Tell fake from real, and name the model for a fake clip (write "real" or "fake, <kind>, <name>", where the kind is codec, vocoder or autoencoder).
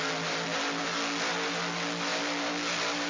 real